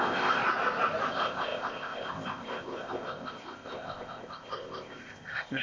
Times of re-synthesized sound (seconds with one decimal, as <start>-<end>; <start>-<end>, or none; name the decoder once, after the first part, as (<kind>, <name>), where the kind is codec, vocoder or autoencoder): 0.0-0.4 (codec, ZipCodec); 1.1-5.6